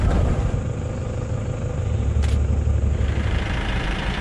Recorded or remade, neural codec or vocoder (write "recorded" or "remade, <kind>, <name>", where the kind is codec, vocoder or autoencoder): remade, vocoder, BigVGAN v2